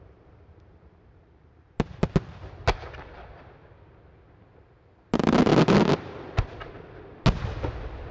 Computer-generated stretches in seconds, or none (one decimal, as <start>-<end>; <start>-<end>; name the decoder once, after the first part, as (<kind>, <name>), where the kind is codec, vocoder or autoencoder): none